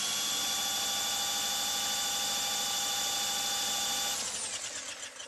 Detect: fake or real real